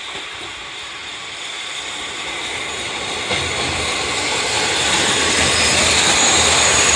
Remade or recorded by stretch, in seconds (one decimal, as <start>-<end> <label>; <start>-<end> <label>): 0.0-7.0 recorded

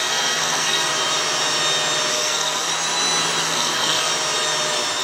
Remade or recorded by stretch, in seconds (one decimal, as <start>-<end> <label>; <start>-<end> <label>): 0.0-0.9 remade; 0.9-2.1 recorded; 2.1-2.7 remade; 2.7-3.4 recorded; 3.4-4.1 remade; 4.1-5.0 recorded

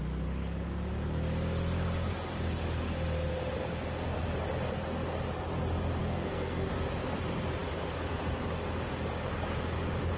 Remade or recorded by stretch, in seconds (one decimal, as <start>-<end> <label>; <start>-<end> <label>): 0.0-6.0 recorded; 6.0-6.7 remade; 6.7-10.2 recorded

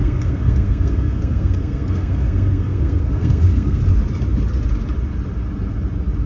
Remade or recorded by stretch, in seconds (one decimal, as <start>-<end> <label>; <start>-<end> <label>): 0.0-3.8 remade; 3.8-6.3 recorded

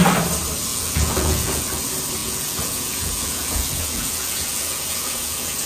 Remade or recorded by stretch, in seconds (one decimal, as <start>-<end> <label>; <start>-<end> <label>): 0.0-0.7 recorded; 0.7-1.8 remade; 1.8-2.2 recorded; 2.2-5.7 remade